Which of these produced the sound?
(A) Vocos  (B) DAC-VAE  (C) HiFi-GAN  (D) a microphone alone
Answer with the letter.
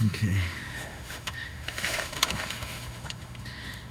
B